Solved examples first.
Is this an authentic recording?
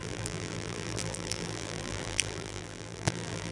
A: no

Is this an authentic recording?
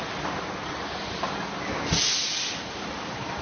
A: yes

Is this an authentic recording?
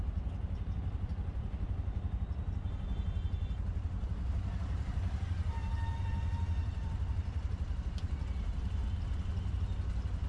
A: yes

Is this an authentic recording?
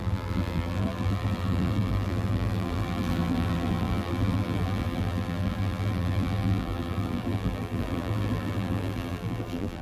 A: no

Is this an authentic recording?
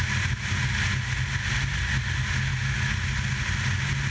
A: yes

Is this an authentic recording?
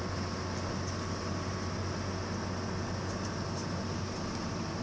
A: yes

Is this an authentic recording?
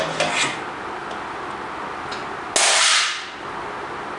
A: yes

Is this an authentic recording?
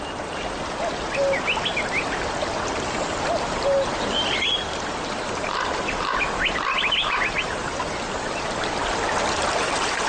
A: yes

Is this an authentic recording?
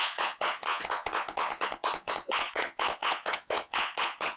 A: no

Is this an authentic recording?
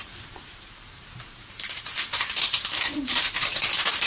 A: no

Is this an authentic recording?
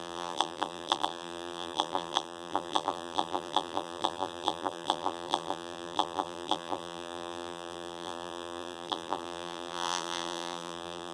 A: no